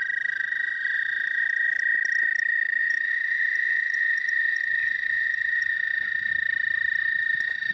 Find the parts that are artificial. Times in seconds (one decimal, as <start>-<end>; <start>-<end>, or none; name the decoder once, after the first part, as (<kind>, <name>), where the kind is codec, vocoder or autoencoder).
2.8-6.3 (vocoder, Vocos); 7.0-7.7